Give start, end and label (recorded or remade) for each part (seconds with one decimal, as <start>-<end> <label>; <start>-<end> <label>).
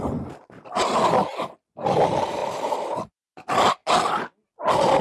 0.0-5.0 recorded